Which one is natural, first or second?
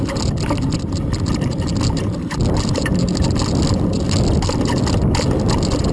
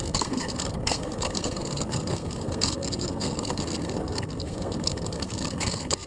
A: first